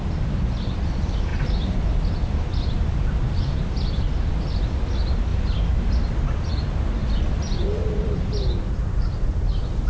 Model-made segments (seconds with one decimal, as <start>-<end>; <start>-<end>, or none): 5.3-6.5; 7.0-8.9